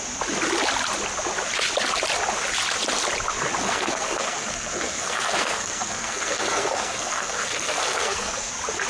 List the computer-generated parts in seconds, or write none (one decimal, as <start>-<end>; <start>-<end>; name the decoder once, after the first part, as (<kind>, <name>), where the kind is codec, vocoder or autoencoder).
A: 3.6-8.5 (codec, SNAC)